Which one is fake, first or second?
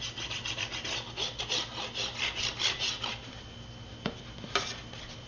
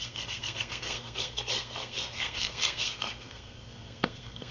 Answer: second